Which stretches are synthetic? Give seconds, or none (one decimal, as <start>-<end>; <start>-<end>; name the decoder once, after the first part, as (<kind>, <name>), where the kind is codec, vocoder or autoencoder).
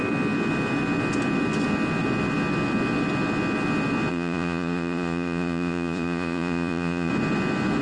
4.1-7.1 (vocoder, Vocos)